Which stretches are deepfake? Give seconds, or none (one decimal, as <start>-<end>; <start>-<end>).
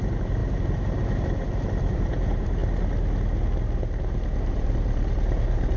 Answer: 0.0-2.6; 4.5-5.8